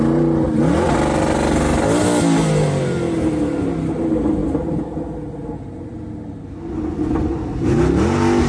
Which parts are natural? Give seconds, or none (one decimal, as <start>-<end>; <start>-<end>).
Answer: 0.0-8.5

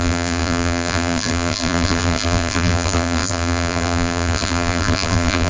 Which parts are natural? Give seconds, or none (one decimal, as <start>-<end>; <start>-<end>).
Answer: none

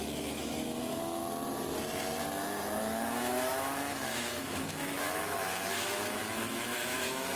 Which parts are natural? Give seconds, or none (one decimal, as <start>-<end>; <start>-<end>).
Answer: 1.2-2.8